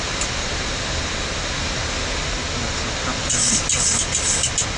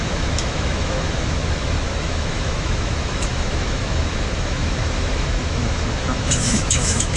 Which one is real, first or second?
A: first